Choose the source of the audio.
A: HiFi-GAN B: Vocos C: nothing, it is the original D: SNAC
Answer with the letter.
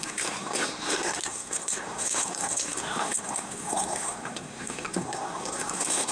D